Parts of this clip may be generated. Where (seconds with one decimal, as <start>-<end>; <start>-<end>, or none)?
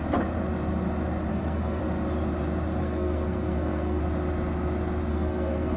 1.3-1.8; 2.8-4.0; 5.1-5.8